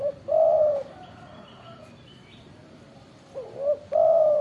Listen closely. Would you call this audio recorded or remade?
remade